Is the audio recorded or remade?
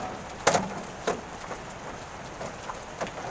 recorded